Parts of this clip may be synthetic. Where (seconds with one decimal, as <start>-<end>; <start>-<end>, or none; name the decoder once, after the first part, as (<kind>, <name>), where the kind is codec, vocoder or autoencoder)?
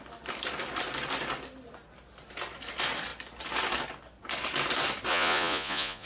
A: 5.1-6.1 (vocoder, Vocos)